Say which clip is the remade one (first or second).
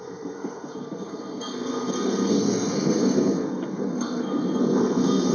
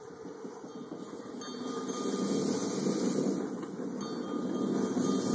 first